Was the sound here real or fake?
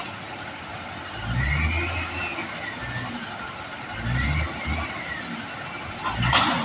real